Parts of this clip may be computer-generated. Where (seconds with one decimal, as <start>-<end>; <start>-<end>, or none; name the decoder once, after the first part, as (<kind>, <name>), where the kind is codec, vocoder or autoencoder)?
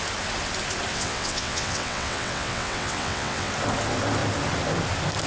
0.9-3.5 (vocoder, WaveNeXt)